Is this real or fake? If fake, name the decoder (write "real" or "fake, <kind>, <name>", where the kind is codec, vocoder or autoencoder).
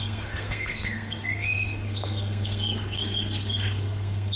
fake, codec, SNAC